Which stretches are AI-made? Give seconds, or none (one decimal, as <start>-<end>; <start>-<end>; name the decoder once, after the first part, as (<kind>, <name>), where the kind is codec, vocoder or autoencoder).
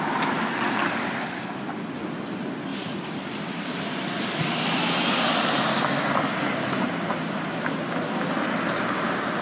none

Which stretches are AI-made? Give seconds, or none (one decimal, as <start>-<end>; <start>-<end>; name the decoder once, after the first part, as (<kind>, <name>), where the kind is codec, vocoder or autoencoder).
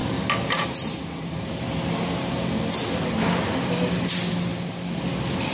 none